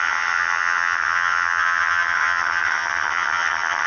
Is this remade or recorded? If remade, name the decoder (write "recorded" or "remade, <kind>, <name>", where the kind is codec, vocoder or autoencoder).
remade, vocoder, HiFi-GAN